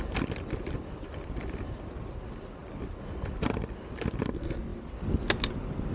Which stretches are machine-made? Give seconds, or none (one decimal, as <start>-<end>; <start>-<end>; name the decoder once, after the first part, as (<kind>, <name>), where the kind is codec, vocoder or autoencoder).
none